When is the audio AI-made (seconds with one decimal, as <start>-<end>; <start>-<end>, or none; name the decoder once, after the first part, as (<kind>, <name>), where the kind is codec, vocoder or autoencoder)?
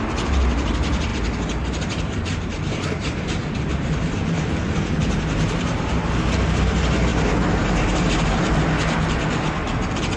1.1-6.1 (vocoder, BigVGAN v2); 7.1-8.5